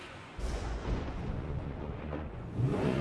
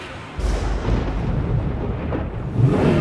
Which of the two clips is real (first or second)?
second